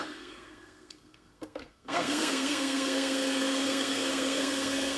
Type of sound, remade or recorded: remade